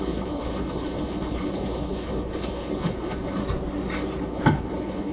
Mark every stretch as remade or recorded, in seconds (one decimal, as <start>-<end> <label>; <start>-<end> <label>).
0.0-3.4 remade; 3.4-4.2 recorded; 4.2-5.1 remade